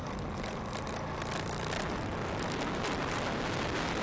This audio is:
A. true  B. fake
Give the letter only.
A